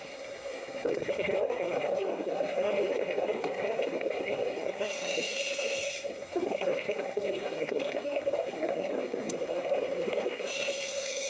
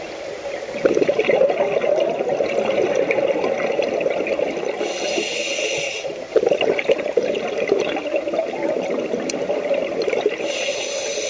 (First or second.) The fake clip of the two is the first